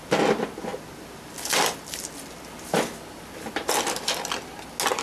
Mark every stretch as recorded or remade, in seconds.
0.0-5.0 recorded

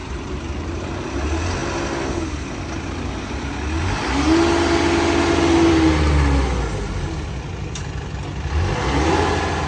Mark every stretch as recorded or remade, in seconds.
0.0-0.8 remade; 0.8-9.7 recorded

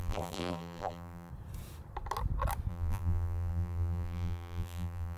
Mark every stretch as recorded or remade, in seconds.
0.0-1.3 remade; 1.3-2.7 recorded; 2.7-5.2 remade

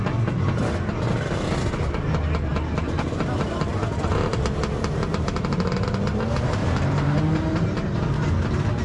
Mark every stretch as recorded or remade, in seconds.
0.0-6.6 recorded; 6.6-7.2 remade; 7.2-8.8 recorded